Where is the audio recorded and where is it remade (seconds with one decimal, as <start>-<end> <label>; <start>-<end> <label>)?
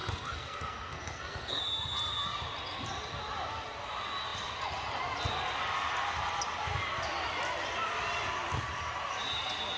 0.0-1.6 remade; 1.6-9.8 recorded